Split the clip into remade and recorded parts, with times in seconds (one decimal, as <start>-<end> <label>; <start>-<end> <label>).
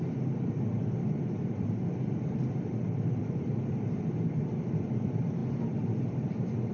0.0-5.4 remade; 5.4-6.3 recorded; 6.3-6.7 remade